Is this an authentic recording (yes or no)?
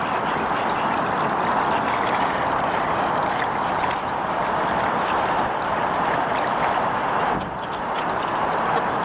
no